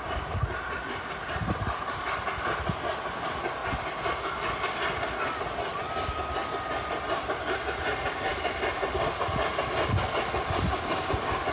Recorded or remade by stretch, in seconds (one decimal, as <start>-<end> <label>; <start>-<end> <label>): 0.0-11.5 recorded